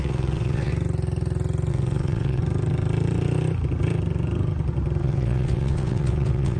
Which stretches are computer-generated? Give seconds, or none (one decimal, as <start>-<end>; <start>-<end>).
0.0-0.7; 1.7-2.4; 5.0-6.6